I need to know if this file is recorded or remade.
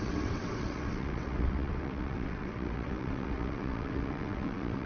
remade